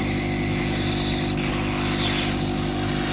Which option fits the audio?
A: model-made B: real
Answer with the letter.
B